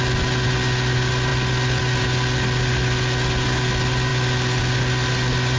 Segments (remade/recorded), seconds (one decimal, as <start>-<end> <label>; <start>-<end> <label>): 0.0-5.6 recorded